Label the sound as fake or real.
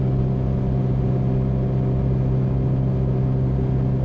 real